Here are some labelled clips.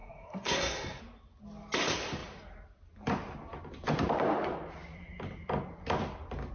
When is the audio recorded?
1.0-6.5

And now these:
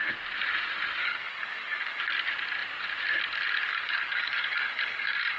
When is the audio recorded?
0.0-1.0; 2.0-3.7